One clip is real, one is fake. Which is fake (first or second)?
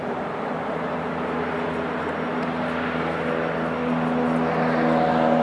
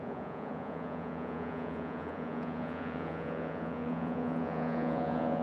second